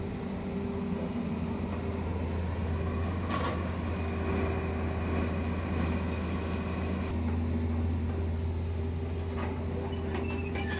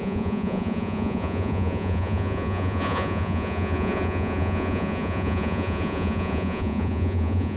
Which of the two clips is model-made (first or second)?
second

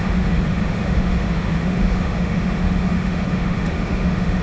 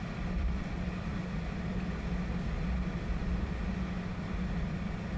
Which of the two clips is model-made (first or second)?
first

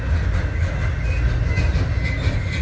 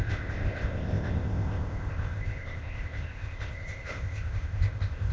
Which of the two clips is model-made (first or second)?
second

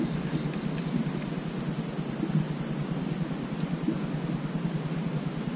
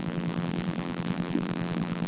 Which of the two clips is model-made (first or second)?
second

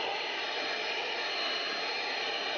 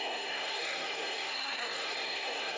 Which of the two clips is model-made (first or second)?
second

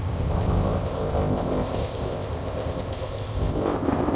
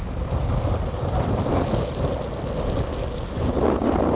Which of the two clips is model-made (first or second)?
first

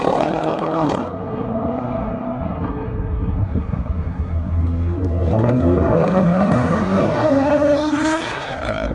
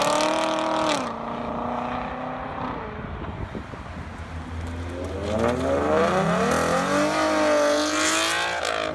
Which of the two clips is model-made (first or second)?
first